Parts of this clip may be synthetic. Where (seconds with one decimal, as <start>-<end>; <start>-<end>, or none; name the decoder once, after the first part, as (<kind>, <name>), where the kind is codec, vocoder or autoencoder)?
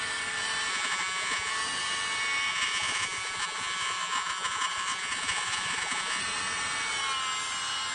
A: 0.7-1.5 (vocoder, Vocos); 2.5-6.2